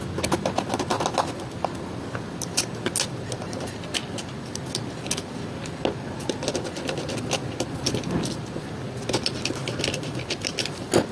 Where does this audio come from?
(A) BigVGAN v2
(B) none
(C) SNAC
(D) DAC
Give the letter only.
B